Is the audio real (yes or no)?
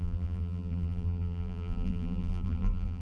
no